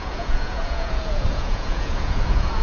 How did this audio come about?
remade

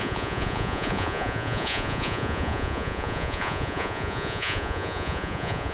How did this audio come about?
remade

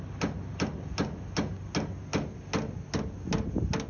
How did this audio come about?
recorded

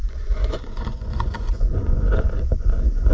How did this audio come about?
remade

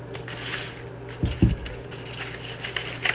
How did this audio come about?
recorded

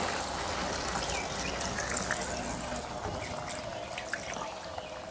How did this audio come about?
recorded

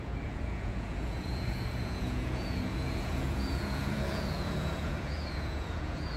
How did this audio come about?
remade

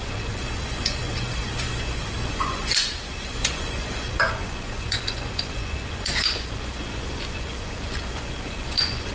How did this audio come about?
remade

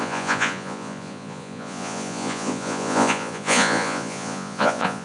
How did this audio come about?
remade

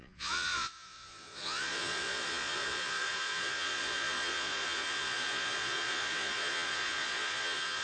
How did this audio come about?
remade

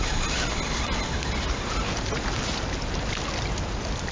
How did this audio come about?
recorded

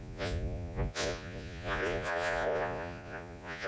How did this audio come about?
remade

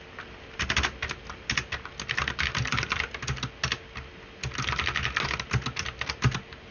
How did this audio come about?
recorded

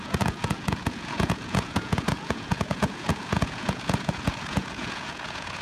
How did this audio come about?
remade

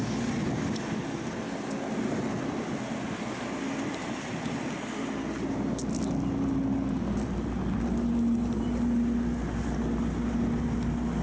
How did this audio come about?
recorded